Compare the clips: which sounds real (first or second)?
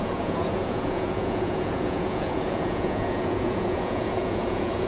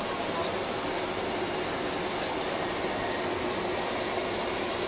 second